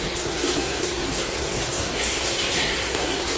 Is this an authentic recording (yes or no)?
no